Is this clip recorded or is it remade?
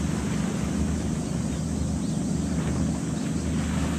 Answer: recorded